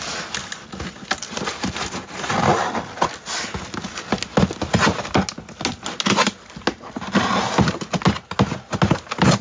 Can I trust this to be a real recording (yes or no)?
yes